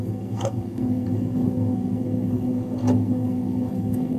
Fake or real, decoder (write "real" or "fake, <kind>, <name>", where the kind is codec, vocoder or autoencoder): fake, codec, SNAC